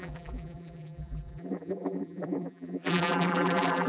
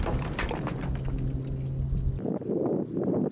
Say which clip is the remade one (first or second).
first